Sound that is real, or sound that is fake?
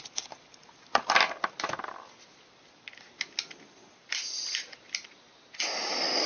real